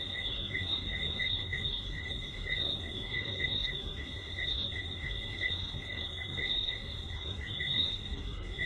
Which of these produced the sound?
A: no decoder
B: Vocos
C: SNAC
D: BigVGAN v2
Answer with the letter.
C